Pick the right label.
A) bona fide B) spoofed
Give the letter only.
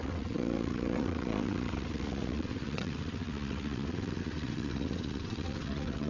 B